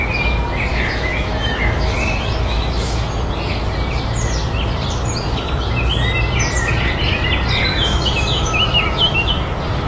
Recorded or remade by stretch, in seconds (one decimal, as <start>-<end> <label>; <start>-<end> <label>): 0.0-0.7 recorded; 0.7-3.1 remade; 3.1-7.7 recorded; 7.7-9.3 remade; 9.3-9.9 recorded